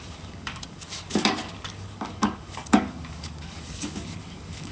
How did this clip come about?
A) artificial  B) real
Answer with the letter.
A